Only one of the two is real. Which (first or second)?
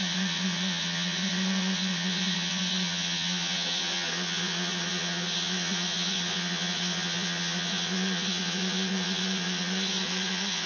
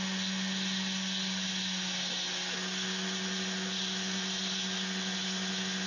second